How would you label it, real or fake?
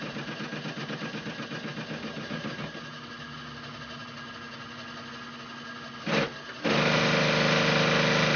real